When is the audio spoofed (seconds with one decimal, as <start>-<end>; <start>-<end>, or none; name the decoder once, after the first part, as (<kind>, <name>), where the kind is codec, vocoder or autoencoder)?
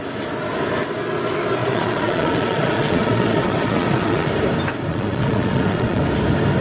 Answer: 1.6-4.3 (vocoder, Vocos); 4.9-6.0